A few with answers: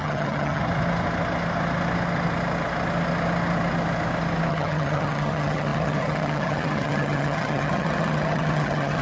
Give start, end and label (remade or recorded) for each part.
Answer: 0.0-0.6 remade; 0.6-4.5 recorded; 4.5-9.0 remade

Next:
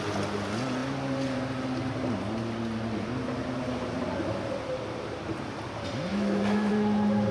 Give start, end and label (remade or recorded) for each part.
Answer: 0.0-6.1 recorded; 6.1-6.7 remade; 6.7-7.3 recorded

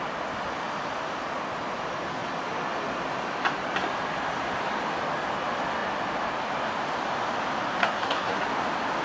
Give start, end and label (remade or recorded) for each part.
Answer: 0.0-7.8 recorded; 7.8-8.4 remade; 8.4-9.0 recorded

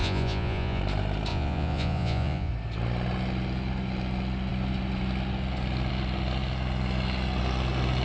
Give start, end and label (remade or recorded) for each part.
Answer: 0.0-0.8 remade; 0.8-1.3 recorded; 1.3-2.5 remade; 2.5-8.0 recorded